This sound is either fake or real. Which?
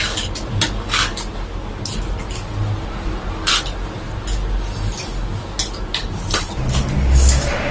real